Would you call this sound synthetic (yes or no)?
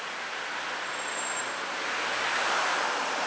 yes